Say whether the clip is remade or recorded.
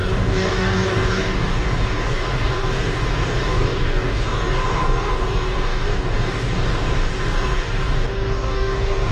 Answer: remade